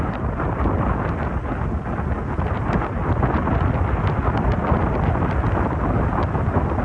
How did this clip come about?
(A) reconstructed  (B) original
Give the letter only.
B